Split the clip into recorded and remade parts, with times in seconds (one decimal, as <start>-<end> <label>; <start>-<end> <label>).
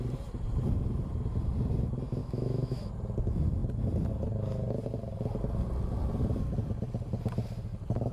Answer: 0.0-2.2 recorded; 2.2-2.9 remade; 2.9-8.1 recorded